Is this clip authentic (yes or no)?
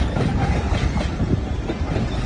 yes